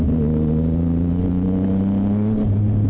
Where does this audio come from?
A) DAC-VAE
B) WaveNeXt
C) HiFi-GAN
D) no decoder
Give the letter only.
D